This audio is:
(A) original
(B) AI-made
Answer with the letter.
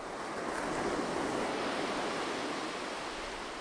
A